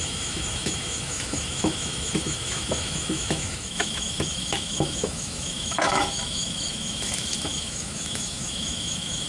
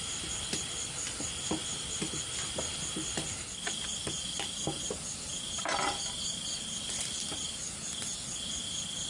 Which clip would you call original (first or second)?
second